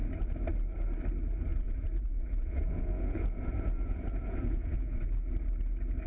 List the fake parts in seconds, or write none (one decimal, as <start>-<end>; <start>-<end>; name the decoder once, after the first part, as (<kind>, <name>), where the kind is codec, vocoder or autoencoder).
1.5-5.0 (vocoder, Vocos)